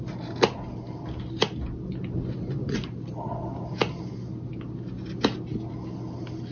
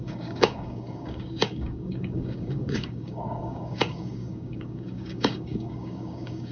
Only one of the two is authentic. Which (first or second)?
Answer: first